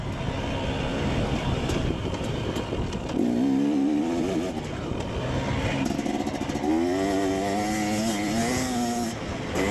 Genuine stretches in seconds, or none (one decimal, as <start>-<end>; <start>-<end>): 0.0-0.9; 2.5-9.7

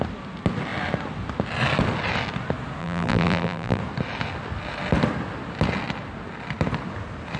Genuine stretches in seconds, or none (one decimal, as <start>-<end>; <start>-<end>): 0.0-2.8; 3.8-7.4

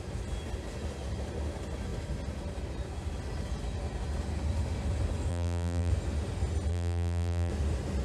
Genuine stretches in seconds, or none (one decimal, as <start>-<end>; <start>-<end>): 0.0-5.3; 5.9-6.7; 7.5-8.0

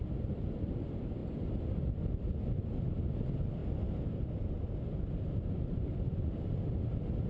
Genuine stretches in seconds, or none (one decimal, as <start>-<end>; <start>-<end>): 0.0-7.3

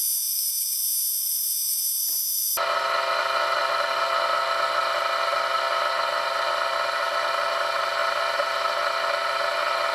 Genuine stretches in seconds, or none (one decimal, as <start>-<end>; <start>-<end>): 0.0-9.9

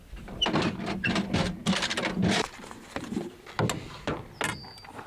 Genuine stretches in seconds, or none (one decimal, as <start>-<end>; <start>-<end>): 0.0-5.1

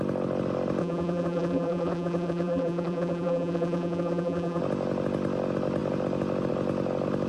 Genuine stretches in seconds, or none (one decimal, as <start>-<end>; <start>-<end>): 0.0-0.8; 4.6-7.3